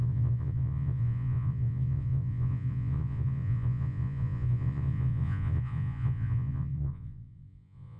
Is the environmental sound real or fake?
fake